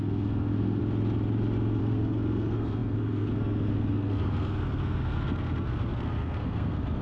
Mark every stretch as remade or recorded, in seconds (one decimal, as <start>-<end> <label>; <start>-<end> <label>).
0.0-0.8 remade; 0.8-1.8 recorded; 1.8-7.0 remade